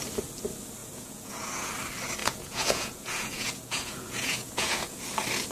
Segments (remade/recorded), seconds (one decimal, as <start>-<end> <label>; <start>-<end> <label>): 0.0-0.8 recorded; 0.8-1.7 remade; 1.7-2.2 recorded; 2.2-5.0 remade; 5.0-5.5 recorded